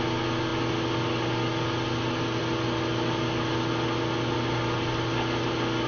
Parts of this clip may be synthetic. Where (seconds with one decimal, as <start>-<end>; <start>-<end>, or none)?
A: none